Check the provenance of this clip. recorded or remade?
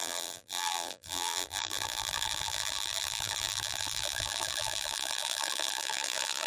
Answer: remade